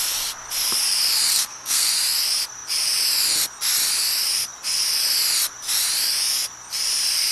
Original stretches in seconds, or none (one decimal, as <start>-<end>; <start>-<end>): 0.0-1.3; 1.9-7.3

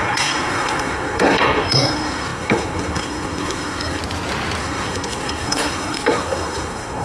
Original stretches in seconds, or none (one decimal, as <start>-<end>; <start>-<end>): 4.0-4.6

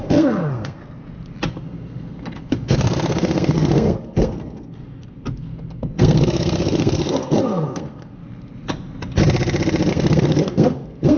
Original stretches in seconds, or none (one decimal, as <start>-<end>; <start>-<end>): 0.8-1.5; 8.2-9.9

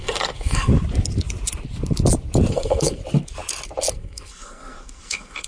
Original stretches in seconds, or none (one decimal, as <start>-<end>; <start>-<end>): 0.7-2.5; 3.0-3.9

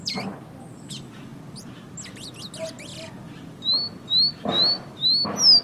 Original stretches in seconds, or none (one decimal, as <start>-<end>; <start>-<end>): 0.0-5.6